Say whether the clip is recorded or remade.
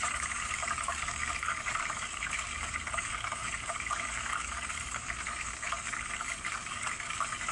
remade